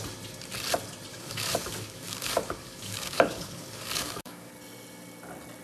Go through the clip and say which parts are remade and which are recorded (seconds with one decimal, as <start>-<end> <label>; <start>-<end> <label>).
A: 0.0-1.1 recorded; 1.1-4.5 remade; 4.5-5.6 recorded